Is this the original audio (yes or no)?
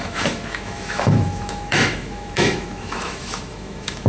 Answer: no